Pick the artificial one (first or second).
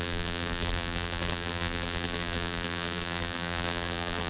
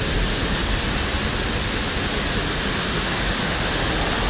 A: first